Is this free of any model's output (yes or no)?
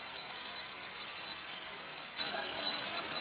no